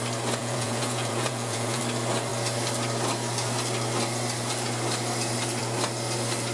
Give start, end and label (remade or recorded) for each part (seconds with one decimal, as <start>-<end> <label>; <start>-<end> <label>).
0.0-0.4 recorded; 0.4-1.8 remade; 1.8-6.5 recorded